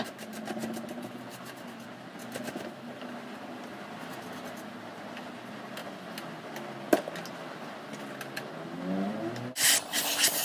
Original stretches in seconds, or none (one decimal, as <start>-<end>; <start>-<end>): 0.0-10.4